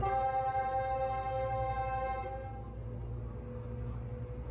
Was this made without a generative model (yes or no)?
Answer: yes